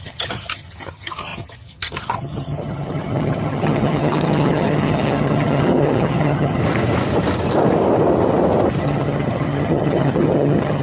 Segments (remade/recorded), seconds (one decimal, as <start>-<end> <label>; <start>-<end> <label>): 0.0-6.6 remade; 6.6-8.8 recorded; 8.8-10.8 remade